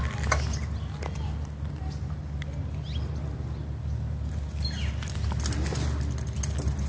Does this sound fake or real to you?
real